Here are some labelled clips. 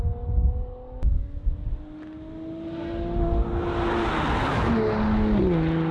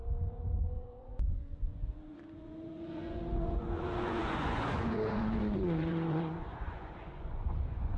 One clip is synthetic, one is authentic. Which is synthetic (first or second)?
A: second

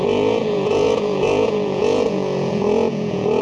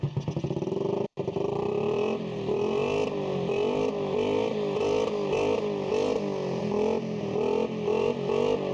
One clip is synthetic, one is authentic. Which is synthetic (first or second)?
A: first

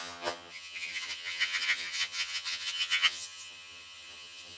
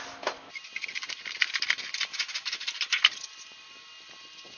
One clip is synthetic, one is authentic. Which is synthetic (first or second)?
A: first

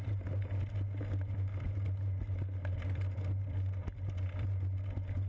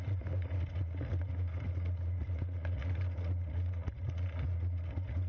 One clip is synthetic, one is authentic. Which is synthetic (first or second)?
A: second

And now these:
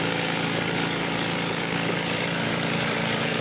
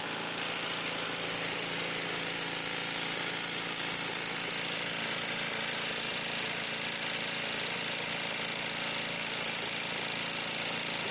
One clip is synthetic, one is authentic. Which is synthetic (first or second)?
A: first